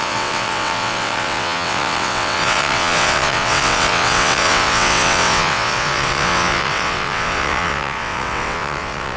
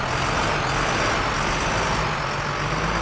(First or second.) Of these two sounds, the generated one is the first